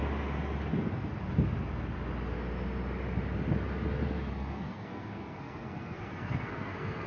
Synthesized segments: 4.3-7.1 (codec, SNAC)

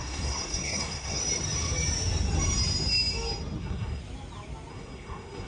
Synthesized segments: 0.0-1.2 (codec, SNAC); 3.6-4.0; 4.7-5.5

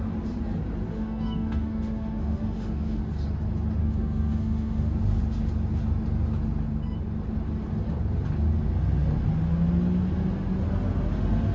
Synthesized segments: 0.9-3.0 (autoencoder, DAC-VAE); 3.8-4.9

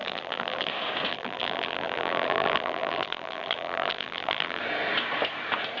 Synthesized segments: 0.0-0.7 (vocoder, BigVGAN v2); 1.1-4.6

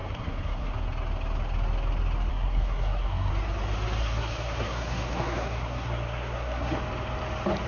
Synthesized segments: 0.0-0.7 (codec, SNAC); 2.3-3.3; 4.0-6.8